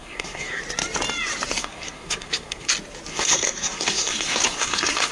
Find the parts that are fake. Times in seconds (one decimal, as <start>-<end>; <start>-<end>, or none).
0.0-0.6; 1.6-2.7; 3.1-5.1